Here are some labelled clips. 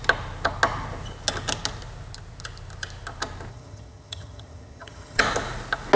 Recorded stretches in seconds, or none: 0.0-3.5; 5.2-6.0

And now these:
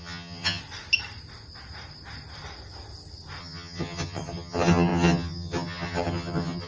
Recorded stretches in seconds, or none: 0.6-3.4

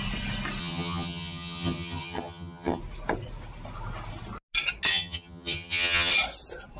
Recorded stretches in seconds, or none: 0.0-0.6; 2.8-4.9; 6.1-6.8

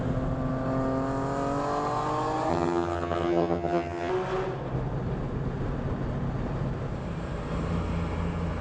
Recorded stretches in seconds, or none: 0.0-2.5; 4.1-8.6